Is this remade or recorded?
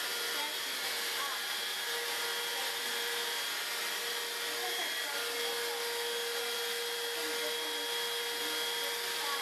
recorded